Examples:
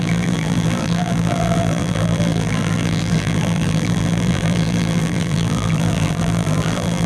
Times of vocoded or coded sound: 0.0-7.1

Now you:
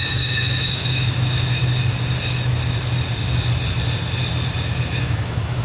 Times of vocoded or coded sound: 0.0-1.6; 5.0-5.6